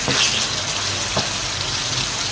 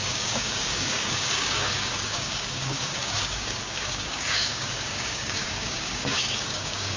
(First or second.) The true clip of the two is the first